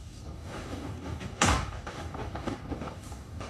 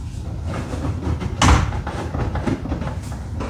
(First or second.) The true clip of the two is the second